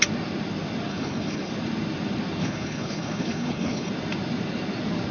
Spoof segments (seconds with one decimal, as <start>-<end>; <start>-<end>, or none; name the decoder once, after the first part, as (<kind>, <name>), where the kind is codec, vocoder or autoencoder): 0.9-1.5 (codec, HILCodec); 2.4-3.9